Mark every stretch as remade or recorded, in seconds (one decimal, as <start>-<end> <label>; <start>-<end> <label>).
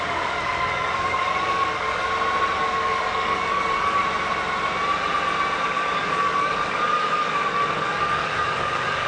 0.0-2.1 remade; 2.1-2.6 recorded; 2.6-4.0 remade; 4.0-5.6 recorded; 5.6-9.1 remade